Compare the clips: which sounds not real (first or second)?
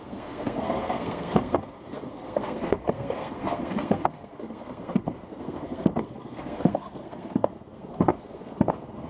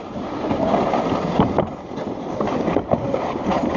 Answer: first